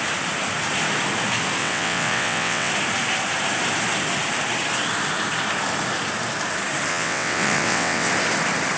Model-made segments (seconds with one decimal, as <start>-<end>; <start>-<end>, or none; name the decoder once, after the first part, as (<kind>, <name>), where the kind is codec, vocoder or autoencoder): 1.6-2.7 (vocoder, WaveNeXt); 6.9-8.1